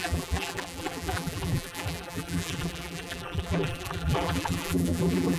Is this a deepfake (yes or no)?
yes